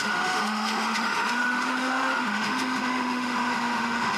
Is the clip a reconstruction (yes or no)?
yes